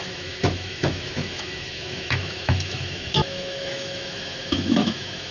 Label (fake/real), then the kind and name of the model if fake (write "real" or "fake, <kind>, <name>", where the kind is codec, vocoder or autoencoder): fake, autoencoder, DAC-VAE